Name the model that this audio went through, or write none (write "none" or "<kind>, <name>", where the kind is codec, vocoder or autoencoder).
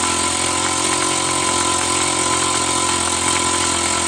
none